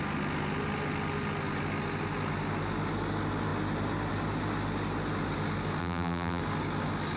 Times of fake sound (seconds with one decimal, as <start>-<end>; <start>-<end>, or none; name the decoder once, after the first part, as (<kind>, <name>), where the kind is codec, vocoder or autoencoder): 5.8-6.4 (vocoder, BigVGAN v2)